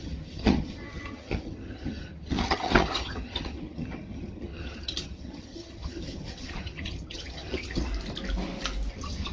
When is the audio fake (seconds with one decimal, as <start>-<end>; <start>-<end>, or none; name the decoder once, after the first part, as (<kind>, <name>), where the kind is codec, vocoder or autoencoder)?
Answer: 0.0-7.9 (vocoder, HiFi-GAN); 8.9-9.3